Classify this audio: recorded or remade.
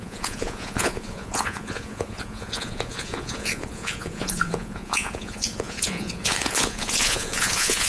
remade